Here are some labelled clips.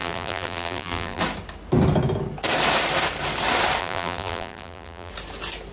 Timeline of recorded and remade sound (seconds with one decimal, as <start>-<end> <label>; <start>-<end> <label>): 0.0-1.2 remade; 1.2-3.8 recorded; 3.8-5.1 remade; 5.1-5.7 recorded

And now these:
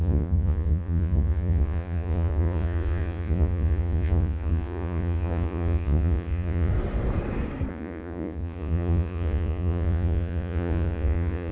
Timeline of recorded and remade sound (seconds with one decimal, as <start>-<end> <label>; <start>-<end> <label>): 0.0-6.7 remade; 6.7-7.7 recorded; 7.7-11.5 remade

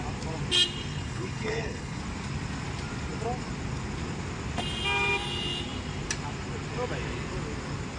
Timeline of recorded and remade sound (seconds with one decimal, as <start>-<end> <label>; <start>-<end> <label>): 0.0-0.9 recorded; 0.9-2.0 remade; 2.0-8.0 recorded

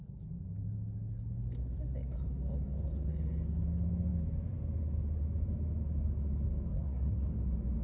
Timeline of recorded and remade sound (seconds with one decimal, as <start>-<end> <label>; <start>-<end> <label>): 0.0-6.7 recorded; 6.7-7.3 remade; 7.3-7.8 recorded